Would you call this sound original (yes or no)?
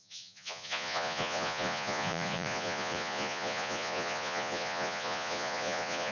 no